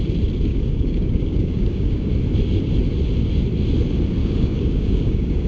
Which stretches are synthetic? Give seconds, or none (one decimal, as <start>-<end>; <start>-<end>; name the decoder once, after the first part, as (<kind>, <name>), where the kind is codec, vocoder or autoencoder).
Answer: 0.5-2.1 (codec, DAC); 4.2-5.5